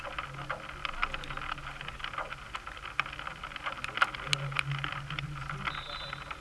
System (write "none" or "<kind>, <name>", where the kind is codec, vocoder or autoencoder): none